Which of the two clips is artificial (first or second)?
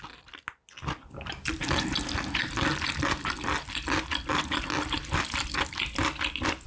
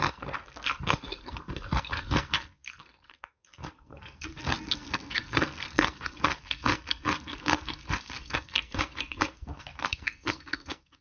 second